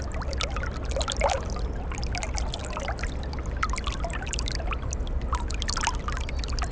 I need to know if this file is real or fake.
real